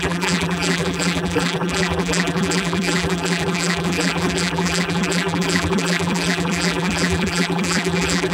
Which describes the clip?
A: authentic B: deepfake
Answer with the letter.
B